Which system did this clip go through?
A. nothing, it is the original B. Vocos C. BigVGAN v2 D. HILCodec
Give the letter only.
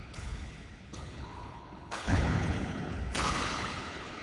D